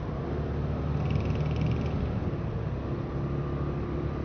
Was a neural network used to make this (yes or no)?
no